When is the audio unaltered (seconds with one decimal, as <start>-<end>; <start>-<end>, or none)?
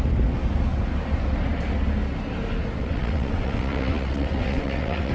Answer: 0.0-2.8